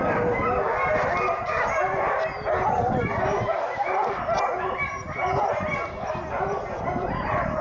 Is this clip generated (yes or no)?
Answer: no